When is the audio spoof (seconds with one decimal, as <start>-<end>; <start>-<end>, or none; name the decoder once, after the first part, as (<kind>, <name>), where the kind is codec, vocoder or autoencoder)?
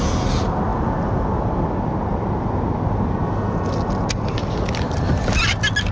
none